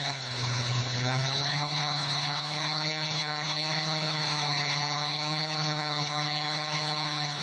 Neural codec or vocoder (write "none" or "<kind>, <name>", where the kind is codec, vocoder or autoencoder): codec, HILCodec